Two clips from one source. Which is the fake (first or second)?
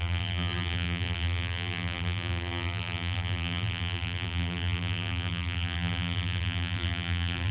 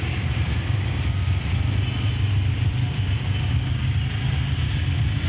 first